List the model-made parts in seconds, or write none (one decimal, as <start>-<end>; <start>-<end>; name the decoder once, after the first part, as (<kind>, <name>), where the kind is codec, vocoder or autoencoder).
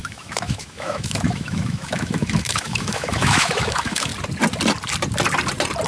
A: 0.0-4.1 (autoencoder, DAC-VAE)